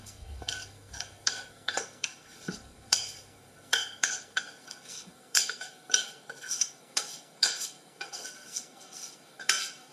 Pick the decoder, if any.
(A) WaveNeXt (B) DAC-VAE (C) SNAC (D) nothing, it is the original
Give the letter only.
C